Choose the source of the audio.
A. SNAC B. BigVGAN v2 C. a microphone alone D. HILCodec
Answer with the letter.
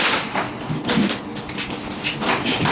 C